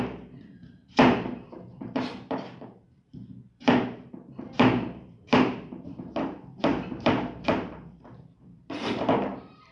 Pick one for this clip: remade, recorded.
remade